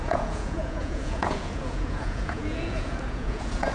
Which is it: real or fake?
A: fake